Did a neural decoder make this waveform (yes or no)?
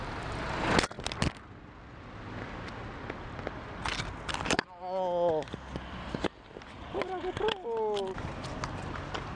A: no